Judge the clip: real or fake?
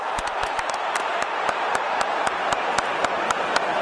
fake